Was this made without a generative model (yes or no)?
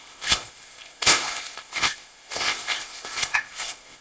no